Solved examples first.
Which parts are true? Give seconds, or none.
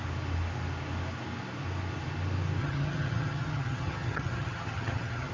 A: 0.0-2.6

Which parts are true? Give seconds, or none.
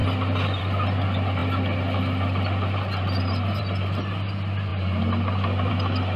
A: 0.0-6.2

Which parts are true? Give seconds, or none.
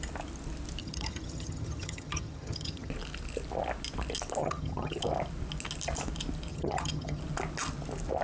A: 0.0-0.8; 2.9-4.4; 5.0-6.5; 7.2-8.2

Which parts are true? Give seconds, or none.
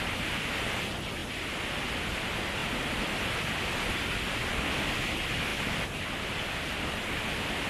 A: 0.0-2.6; 3.6-5.5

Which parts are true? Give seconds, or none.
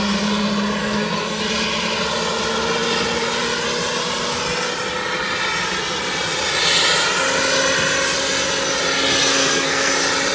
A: 0.0-0.8; 1.4-9.3; 9.9-10.3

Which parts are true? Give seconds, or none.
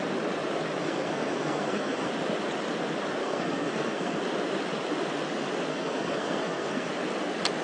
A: 0.0-0.8; 2.1-3.2; 4.2-5.7; 6.9-7.6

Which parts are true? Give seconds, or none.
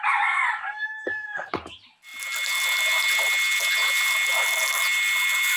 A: 0.0-0.6; 1.5-5.6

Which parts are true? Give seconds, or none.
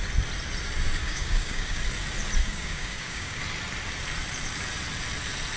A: 0.0-1.0; 1.8-2.4; 3.4-5.6